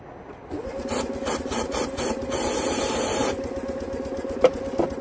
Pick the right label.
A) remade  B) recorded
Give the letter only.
B